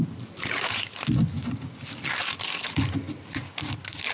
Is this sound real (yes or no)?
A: yes